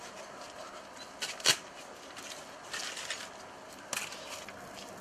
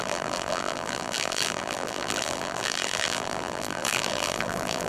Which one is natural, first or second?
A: first